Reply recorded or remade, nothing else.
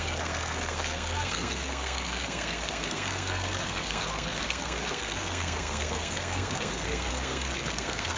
remade